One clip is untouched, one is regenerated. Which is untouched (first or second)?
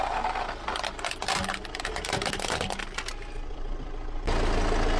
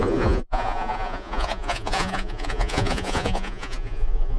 first